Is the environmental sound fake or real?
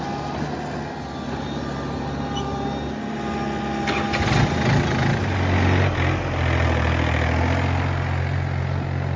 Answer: real